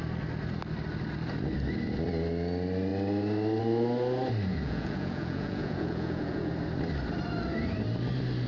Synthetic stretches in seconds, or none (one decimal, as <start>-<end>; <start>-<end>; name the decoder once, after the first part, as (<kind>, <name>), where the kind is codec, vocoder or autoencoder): 4.5-6.5 (vocoder, Vocos)